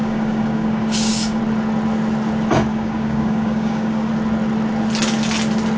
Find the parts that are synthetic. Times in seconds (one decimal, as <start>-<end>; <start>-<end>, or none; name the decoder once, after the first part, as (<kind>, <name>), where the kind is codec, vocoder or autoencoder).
0.0-1.4 (codec, DAC); 2.7-4.1